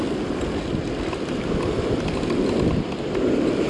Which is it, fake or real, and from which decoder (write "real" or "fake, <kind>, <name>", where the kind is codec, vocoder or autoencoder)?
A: real